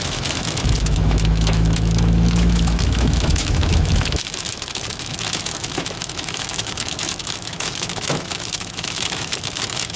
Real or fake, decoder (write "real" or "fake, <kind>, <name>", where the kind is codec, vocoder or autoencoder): fake, autoencoder, DAC-VAE